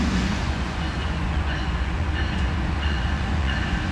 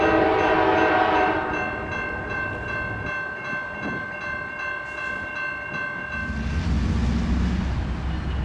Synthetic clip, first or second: first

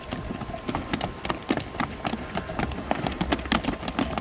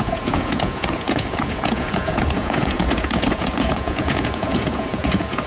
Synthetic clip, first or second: second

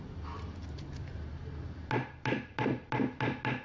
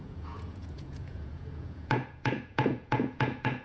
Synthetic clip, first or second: second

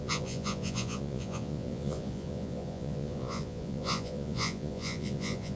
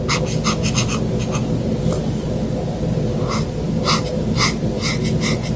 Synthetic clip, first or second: first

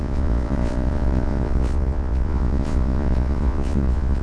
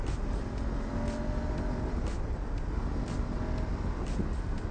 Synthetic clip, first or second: first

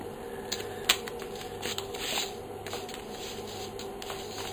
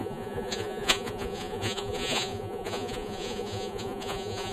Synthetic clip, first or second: second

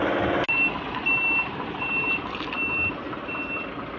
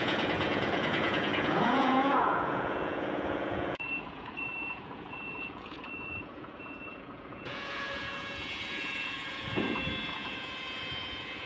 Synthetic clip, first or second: second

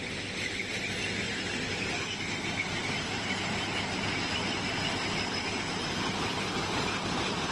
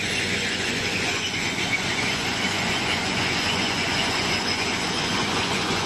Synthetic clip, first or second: second